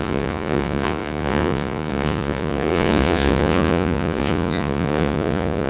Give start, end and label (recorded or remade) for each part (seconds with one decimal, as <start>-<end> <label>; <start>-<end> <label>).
0.0-5.7 remade